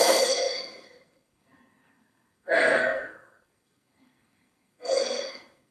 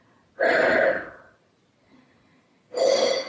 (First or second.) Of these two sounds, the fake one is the first